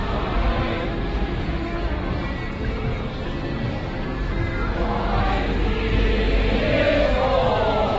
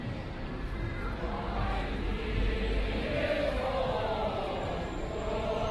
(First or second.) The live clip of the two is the first